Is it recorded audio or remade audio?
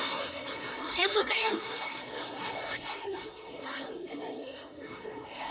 remade